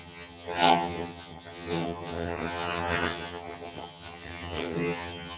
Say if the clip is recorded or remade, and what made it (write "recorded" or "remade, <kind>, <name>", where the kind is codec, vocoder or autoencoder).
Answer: remade, vocoder, HiFi-GAN